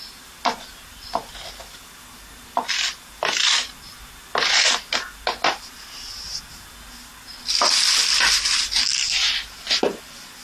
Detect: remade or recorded recorded